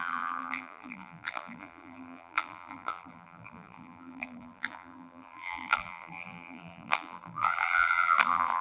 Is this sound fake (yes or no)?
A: yes